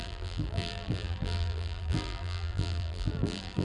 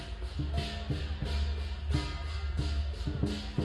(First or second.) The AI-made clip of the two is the first